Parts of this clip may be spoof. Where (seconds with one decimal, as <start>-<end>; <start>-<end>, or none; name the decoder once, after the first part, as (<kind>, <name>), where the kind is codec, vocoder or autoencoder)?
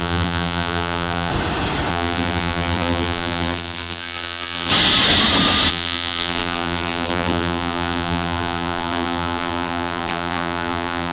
0.0-1.3 (vocoder, BigVGAN v2); 1.9-4.7; 5.7-11.1